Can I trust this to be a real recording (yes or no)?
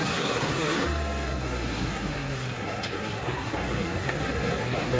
no